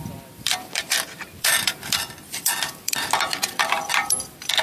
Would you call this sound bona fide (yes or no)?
no